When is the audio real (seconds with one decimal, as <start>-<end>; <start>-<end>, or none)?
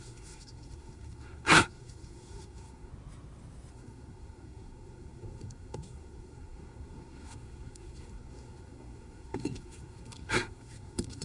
2.9-3.7